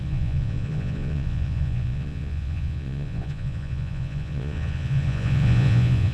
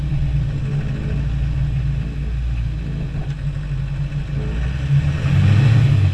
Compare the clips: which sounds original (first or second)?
second